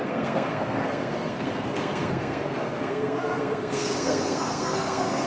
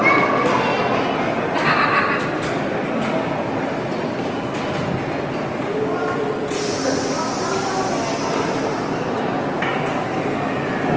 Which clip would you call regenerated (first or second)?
first